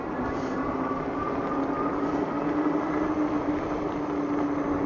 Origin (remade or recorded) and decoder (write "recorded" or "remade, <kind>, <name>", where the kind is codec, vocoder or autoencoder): recorded